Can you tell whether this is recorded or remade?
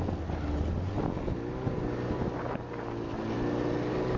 recorded